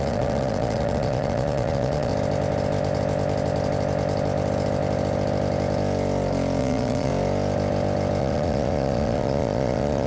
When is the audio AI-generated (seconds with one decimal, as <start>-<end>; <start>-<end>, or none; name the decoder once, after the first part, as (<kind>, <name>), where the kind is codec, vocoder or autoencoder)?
0.0-2.1 (vocoder, Vocos); 6.6-7.1; 8.2-10.1